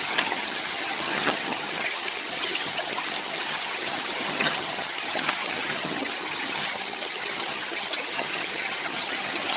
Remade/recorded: remade